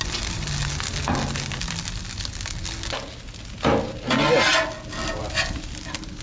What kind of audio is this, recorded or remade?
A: recorded